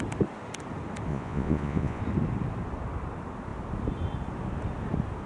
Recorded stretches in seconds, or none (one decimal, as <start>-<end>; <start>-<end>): 0.0-1.1; 2.0-5.3